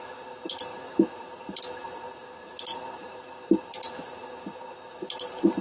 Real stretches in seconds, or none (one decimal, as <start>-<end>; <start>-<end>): 0.0-0.7; 1.6-2.7; 4.0-5.6